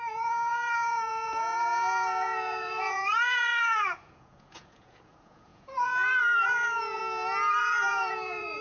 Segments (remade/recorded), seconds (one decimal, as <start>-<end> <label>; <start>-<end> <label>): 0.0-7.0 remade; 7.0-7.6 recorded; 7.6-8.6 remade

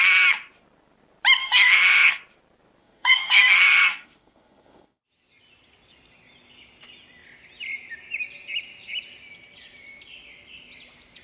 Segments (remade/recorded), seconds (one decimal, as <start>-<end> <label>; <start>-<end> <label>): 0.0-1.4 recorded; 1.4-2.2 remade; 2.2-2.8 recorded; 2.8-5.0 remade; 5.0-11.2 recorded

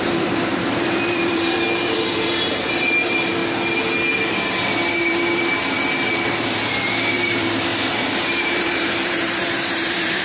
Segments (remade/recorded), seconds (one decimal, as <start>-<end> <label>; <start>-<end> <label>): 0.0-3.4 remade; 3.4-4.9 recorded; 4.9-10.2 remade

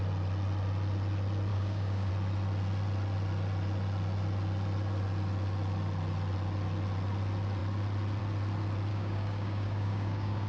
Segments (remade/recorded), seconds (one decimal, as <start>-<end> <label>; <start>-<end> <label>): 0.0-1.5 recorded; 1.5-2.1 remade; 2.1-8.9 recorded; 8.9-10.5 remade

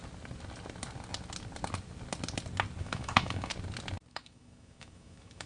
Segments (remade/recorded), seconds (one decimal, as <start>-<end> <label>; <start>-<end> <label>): 0.0-2.8 recorded; 2.8-3.5 remade; 3.5-4.1 recorded; 4.1-5.5 remade

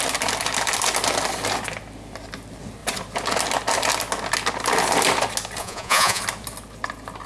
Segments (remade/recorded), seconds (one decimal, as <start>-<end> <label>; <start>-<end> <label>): 0.0-5.6 recorded; 5.6-6.2 remade; 6.2-7.3 recorded